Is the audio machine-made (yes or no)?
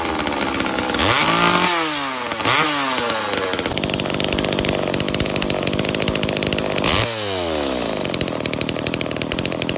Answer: no